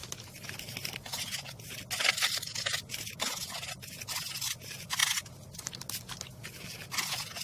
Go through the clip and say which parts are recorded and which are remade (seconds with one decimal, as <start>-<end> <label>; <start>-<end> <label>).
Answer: 0.0-7.4 recorded